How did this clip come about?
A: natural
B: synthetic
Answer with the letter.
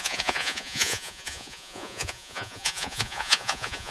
B